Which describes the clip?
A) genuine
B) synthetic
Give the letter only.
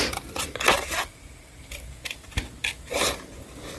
A